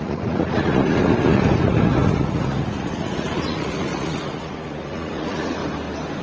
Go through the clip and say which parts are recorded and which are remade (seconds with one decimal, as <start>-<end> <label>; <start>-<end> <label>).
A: 0.0-5.6 remade; 5.6-6.2 recorded